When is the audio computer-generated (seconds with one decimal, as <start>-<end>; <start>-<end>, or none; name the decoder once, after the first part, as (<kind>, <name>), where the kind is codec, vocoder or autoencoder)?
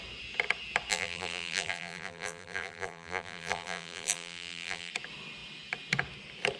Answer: 0.9-4.9 (vocoder, BigVGAN v2)